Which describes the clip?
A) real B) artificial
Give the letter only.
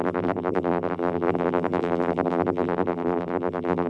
B